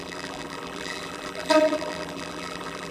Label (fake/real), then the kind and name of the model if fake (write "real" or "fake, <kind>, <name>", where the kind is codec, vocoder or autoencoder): fake, vocoder, BigVGAN v2